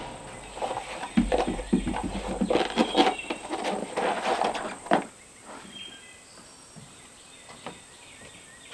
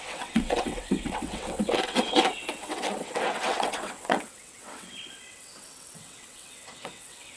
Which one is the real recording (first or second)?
first